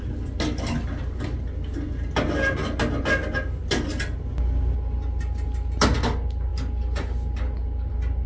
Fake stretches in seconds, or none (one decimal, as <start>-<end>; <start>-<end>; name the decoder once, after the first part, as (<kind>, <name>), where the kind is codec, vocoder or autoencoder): none